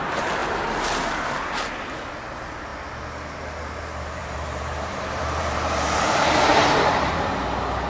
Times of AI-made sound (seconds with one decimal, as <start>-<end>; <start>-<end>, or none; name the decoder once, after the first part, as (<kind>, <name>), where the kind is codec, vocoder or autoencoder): 4.2-7.1 (vocoder, BigVGAN v2)